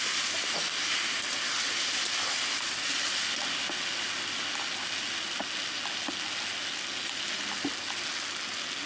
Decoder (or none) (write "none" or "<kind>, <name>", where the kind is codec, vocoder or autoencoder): none